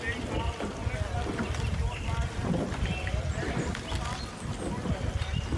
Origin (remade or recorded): recorded